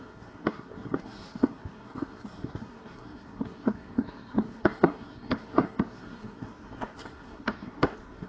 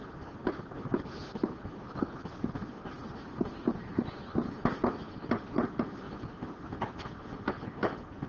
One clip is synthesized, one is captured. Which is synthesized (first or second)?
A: first